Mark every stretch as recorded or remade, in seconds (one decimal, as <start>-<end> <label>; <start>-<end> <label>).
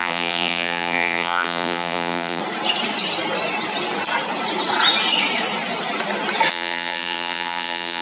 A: 0.0-2.4 remade; 2.4-6.5 recorded; 6.5-8.0 remade